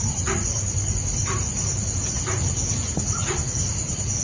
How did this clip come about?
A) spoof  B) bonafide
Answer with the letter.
B